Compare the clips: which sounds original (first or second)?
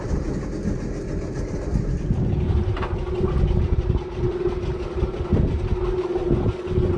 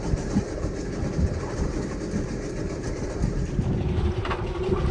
first